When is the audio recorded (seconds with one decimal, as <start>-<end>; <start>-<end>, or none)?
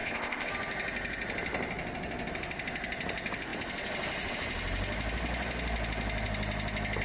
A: 0.5-7.0